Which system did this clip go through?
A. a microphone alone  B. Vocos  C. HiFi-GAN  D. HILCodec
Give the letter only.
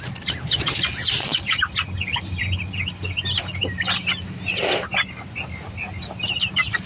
A